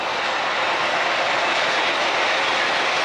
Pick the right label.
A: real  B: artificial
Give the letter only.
A